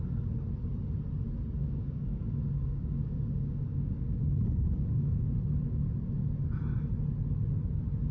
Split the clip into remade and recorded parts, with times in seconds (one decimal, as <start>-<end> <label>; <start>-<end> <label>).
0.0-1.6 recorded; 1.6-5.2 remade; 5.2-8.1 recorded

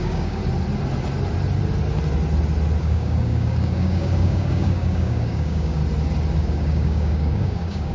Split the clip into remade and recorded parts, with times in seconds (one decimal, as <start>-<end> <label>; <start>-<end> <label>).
0.0-0.4 remade; 0.4-2.8 recorded; 2.8-5.8 remade; 5.8-6.4 recorded; 6.4-7.9 remade

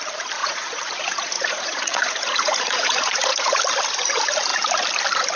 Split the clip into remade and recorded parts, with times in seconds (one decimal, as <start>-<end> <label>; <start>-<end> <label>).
0.0-0.4 recorded; 0.4-3.6 remade; 3.6-5.4 recorded

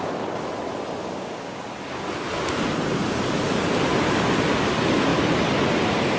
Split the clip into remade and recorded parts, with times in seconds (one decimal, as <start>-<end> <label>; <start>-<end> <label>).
0.0-1.0 recorded; 1.0-1.6 remade; 1.6-6.2 recorded

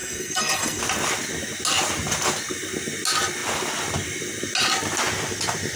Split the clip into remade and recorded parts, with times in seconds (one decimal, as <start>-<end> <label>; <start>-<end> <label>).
0.0-0.8 remade; 0.8-5.8 recorded

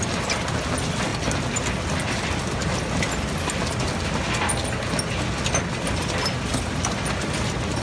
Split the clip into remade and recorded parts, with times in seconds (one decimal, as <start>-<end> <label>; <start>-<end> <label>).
0.0-7.8 recorded

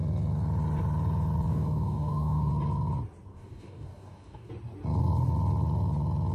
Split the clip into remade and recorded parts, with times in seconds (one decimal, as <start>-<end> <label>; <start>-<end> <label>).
0.0-1.5 recorded; 1.5-2.5 remade; 2.5-3.3 recorded; 3.3-4.5 remade; 4.5-6.3 recorded